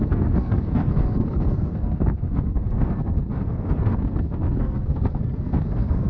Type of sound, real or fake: fake